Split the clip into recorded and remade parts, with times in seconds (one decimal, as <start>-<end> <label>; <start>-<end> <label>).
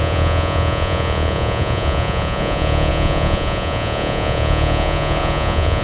0.0-5.8 remade